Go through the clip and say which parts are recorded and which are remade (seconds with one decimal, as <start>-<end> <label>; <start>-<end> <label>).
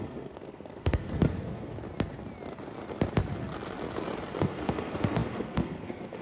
0.0-1.7 remade; 1.7-4.4 recorded; 4.4-6.2 remade